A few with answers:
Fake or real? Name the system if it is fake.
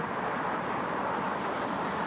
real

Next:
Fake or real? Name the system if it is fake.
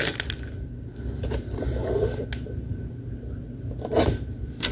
real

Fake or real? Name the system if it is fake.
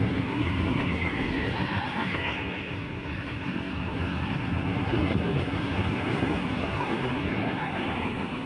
fake, codec, SNAC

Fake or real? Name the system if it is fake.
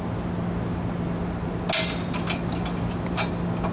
real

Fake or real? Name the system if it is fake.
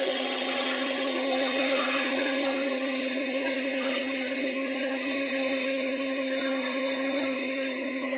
fake, vocoder, HiFi-GAN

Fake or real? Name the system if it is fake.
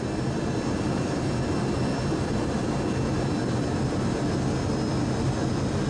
real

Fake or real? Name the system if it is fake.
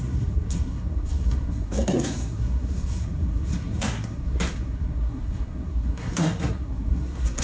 fake, codec, SNAC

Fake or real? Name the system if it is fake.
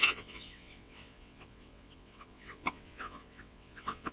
fake, vocoder, WaveNeXt